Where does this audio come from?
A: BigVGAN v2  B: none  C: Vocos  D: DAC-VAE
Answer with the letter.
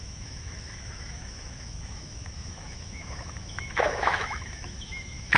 D